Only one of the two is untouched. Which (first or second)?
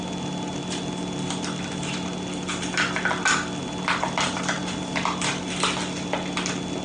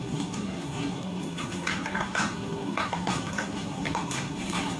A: first